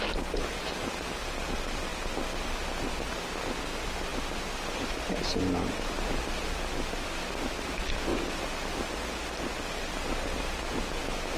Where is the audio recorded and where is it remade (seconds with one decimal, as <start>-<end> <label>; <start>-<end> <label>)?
0.0-11.4 recorded